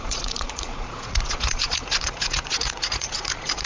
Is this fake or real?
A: fake